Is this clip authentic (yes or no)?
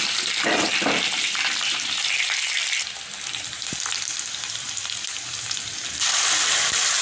no